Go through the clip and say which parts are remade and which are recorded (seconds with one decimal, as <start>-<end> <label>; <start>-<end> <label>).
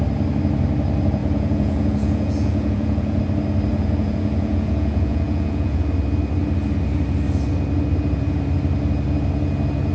0.0-1.2 recorded; 1.2-3.2 remade; 3.2-3.7 recorded; 3.7-5.9 remade; 5.9-9.9 recorded